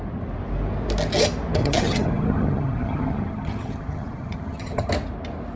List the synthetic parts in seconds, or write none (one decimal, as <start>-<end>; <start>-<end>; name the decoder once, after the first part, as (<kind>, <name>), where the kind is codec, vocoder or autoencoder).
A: 1.6-4.9 (vocoder, HiFi-GAN)